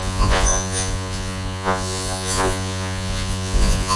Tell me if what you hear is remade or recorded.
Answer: remade